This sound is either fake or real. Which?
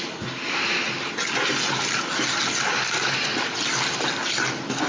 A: real